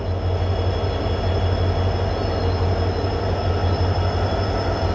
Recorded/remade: recorded